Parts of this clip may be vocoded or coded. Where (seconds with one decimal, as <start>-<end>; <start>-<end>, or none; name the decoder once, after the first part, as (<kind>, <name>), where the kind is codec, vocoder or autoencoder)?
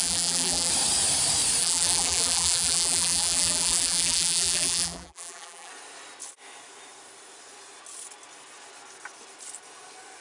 0.0-0.7 (vocoder, BigVGAN v2); 1.6-5.7